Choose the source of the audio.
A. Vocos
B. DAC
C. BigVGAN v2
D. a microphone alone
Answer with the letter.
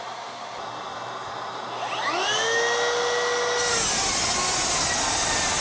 D